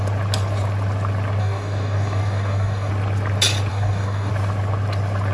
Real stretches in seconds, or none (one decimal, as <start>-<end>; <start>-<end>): 0.0-1.4; 2.9-3.7; 4.3-5.3